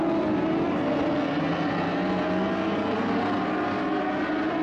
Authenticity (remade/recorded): recorded